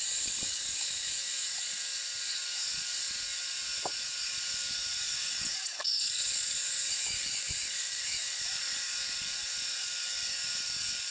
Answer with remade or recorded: remade